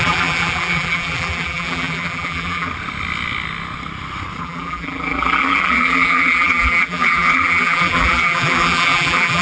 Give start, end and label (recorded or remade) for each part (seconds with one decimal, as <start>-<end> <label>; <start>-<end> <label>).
0.0-2.7 remade; 2.7-4.4 recorded; 4.4-9.4 remade